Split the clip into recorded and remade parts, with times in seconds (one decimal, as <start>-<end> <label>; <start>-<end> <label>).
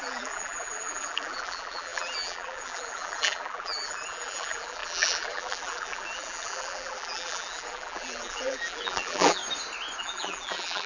0.0-9.4 remade; 9.4-10.0 recorded; 10.0-10.9 remade